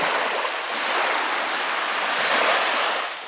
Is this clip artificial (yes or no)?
no